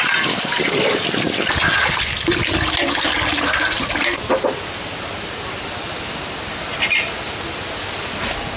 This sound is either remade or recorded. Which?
recorded